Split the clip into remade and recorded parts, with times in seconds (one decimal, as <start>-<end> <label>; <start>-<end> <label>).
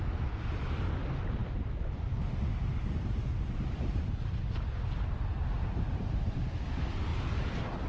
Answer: 0.0-5.3 recorded; 5.3-6.5 remade; 6.5-7.1 recorded; 7.1-7.9 remade